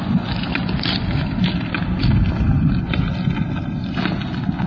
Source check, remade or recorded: recorded